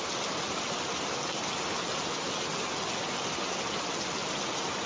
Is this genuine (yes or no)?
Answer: yes